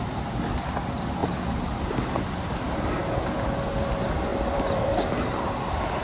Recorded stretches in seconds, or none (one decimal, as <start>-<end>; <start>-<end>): 0.0-4.3; 4.9-6.0